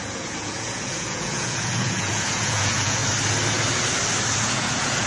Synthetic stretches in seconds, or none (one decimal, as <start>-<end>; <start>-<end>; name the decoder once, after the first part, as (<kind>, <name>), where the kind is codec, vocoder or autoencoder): 0.0-3.0 (vocoder, Vocos); 4.4-5.1